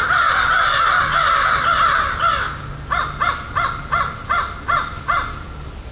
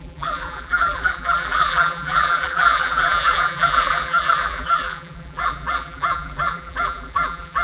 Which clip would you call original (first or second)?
first